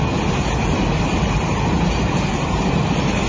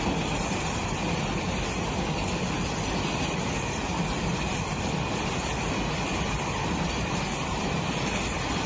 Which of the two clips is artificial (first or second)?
second